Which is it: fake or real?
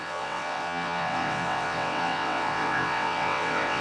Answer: fake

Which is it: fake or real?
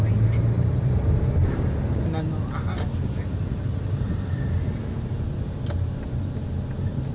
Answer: real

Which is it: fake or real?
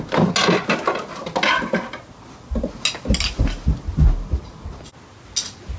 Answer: real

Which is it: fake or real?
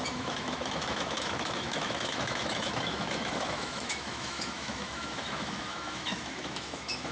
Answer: fake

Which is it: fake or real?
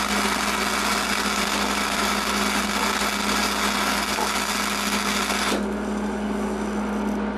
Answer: real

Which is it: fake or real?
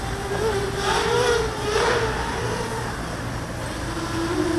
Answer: real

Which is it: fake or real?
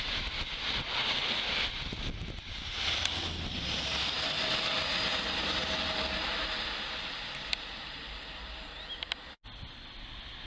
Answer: real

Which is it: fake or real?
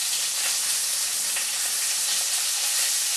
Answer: real